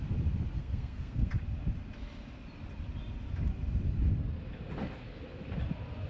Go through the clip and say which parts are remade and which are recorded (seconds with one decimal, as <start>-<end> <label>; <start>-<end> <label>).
0.0-0.6 recorded; 0.6-1.3 remade; 1.3-6.1 recorded

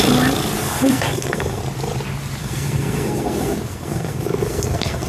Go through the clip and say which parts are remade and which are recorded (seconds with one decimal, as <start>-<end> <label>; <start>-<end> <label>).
0.0-0.6 recorded; 0.6-1.6 remade; 1.6-2.4 recorded; 2.4-5.1 remade

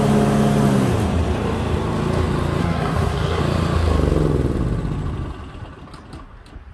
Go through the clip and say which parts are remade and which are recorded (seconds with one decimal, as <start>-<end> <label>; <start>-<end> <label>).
0.0-2.6 recorded; 2.6-3.4 remade; 3.4-6.7 recorded

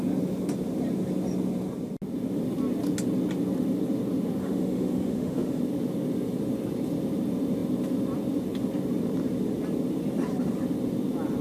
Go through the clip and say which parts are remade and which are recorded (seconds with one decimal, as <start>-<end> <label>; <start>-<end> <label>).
0.0-4.4 recorded; 4.4-5.6 remade; 5.6-11.4 recorded

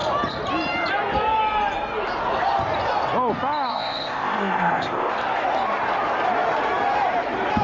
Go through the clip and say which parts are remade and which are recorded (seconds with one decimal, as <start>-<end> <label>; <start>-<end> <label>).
0.0-3.7 recorded; 3.7-5.1 remade; 5.1-7.6 recorded

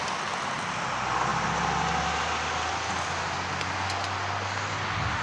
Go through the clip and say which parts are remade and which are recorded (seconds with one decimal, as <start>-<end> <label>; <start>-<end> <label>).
0.0-5.2 recorded

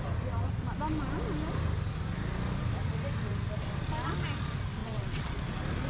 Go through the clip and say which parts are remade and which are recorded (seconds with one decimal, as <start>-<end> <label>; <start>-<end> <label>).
0.0-4.8 recorded; 4.8-5.4 remade; 5.4-5.9 recorded